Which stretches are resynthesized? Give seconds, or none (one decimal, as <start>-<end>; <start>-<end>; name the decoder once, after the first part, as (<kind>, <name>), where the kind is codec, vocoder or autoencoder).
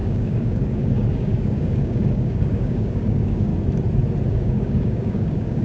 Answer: 0.0-3.5 (codec, DAC); 4.3-5.6